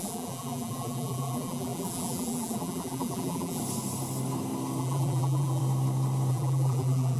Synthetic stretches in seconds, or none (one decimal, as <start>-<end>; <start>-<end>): 0.0-3.6; 4.8-5.6; 6.3-7.2